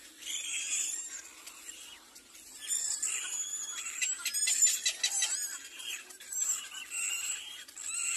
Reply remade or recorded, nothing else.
recorded